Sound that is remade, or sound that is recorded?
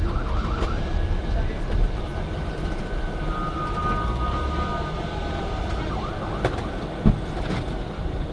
recorded